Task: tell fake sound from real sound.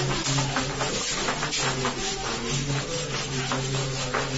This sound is real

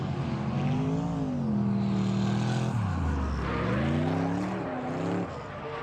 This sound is real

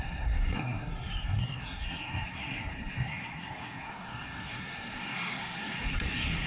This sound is fake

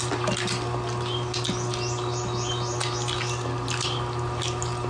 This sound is real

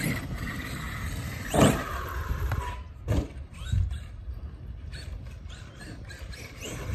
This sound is real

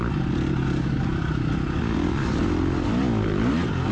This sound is real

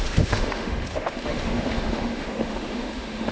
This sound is fake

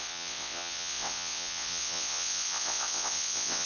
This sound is fake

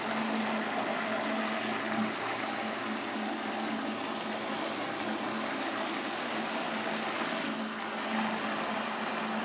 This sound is real